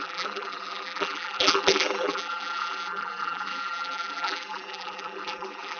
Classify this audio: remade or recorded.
remade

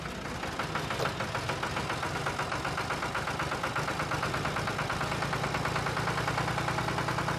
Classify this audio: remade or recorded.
recorded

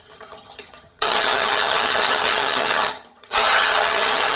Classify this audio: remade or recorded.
remade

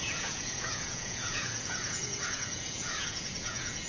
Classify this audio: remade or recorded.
remade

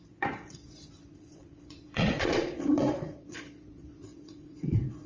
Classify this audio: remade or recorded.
remade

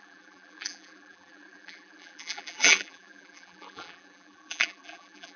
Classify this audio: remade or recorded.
remade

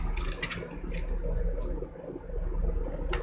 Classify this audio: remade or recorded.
recorded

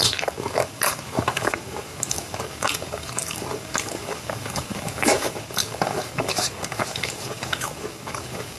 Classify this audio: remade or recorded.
remade